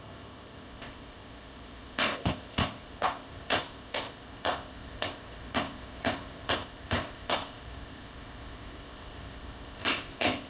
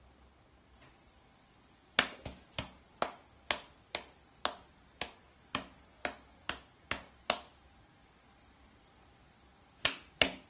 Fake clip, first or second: first